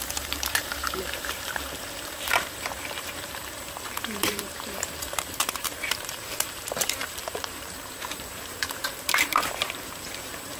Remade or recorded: remade